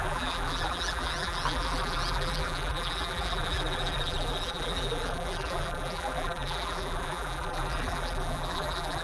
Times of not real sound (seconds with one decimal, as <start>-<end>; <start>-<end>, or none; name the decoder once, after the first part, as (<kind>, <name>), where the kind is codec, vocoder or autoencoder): 0.0-9.0 (vocoder, BigVGAN v2)